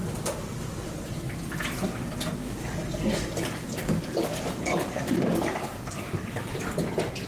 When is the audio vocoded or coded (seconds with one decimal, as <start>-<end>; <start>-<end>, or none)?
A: 2.4-6.8